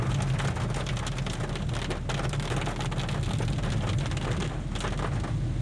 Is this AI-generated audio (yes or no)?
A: no